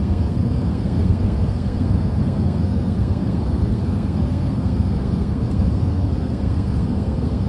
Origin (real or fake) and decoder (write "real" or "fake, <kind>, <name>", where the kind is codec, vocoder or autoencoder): fake, codec, SNAC